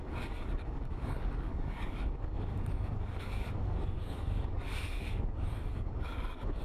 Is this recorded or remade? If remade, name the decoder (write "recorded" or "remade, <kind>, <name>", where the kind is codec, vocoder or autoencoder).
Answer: remade, codec, DAC